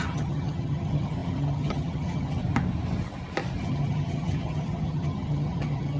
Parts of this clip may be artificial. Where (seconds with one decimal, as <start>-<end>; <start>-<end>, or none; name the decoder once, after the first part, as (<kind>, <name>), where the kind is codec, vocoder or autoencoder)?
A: 0.0-2.4 (vocoder, HiFi-GAN); 3.6-6.0